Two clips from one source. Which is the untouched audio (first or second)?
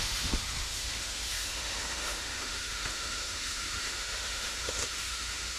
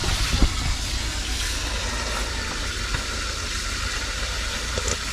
second